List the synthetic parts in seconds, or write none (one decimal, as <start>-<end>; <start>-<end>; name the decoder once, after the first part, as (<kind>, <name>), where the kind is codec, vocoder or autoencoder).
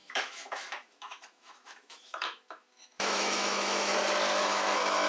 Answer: 0.0-3.9 (autoencoder, DAC-VAE); 4.4-5.1